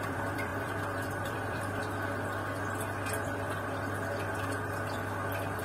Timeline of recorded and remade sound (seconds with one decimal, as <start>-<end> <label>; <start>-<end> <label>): 0.0-1.8 remade; 1.8-5.6 recorded